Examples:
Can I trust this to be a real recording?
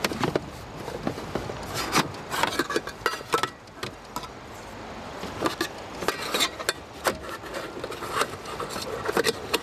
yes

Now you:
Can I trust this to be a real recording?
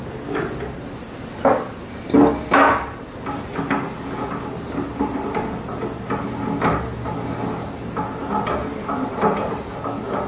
no